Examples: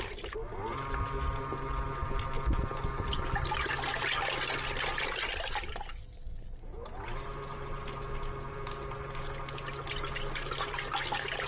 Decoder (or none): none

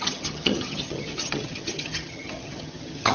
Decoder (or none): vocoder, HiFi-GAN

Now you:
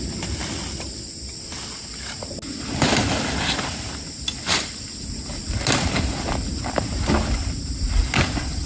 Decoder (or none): none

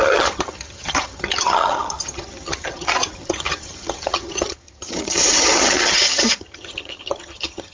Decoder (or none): vocoder, HiFi-GAN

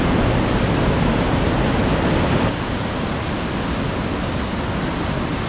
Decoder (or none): none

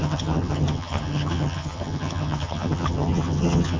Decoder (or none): vocoder, HiFi-GAN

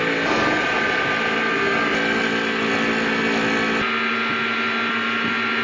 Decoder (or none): none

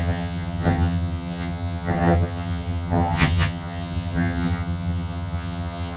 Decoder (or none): vocoder, HiFi-GAN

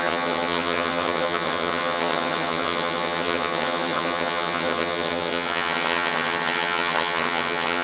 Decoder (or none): vocoder, HiFi-GAN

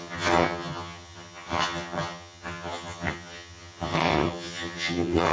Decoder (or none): vocoder, HiFi-GAN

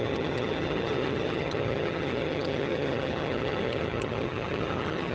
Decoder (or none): vocoder, HiFi-GAN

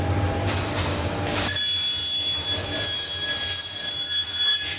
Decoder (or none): none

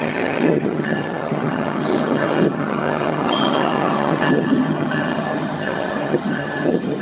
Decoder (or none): vocoder, HiFi-GAN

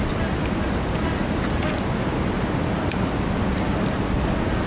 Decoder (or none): none